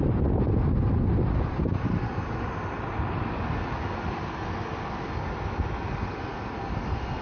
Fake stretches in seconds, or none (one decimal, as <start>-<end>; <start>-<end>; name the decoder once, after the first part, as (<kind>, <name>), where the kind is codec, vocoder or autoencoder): none